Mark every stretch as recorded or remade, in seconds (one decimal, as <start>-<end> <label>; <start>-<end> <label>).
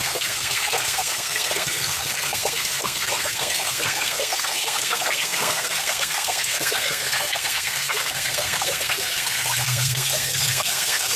0.0-11.2 remade